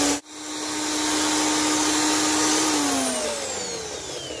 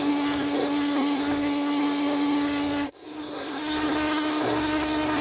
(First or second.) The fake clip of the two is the second